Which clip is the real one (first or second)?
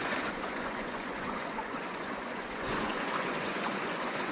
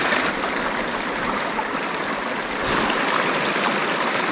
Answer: second